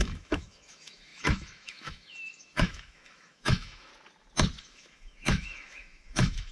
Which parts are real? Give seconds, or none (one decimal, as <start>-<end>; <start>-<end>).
3.9-4.6